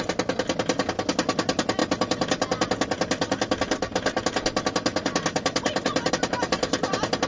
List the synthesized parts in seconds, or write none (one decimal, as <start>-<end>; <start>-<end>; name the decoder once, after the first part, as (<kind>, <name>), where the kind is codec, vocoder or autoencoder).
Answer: none